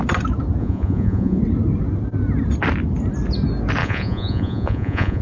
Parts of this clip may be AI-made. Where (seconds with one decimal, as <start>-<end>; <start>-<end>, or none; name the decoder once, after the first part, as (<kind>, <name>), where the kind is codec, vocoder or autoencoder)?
0.6-1.4 (vocoder, Vocos); 3.8-5.2

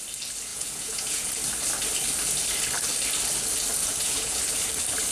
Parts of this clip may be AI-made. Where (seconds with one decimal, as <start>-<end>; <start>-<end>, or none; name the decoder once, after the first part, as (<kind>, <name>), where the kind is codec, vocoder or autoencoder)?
0.5-1.3 (vocoder, Vocos); 3.8-4.4

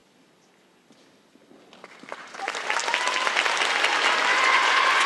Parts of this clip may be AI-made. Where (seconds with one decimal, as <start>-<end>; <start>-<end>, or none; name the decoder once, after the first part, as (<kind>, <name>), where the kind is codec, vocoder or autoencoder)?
4.3-5.1 (vocoder, Vocos)

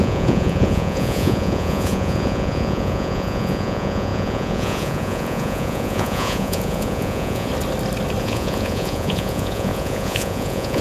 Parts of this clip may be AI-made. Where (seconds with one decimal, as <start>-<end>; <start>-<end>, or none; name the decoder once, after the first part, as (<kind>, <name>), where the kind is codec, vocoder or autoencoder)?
0.0-7.5 (vocoder, Vocos); 8.2-10.8

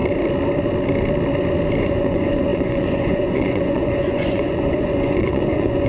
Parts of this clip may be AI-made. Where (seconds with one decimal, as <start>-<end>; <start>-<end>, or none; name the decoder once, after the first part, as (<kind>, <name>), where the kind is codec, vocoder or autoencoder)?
1.8-5.9 (vocoder, Vocos)